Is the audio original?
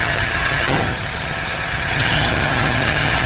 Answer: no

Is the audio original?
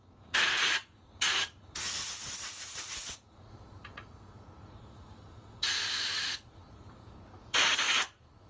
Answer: no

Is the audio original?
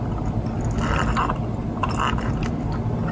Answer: yes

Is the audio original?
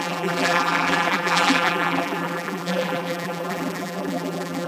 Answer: no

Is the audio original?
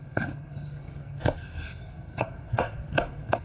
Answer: no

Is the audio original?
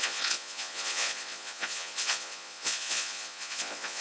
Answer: no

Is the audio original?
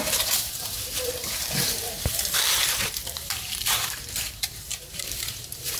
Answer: no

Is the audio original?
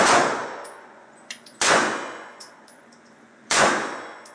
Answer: no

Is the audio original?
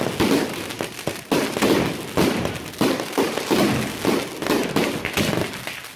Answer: yes